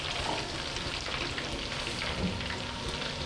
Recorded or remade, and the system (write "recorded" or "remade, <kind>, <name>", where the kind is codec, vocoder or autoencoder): recorded